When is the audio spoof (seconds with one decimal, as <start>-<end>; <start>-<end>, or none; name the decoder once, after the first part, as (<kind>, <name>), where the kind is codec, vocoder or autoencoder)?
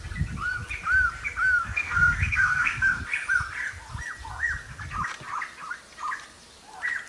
1.6-3.0 (codec, SNAC)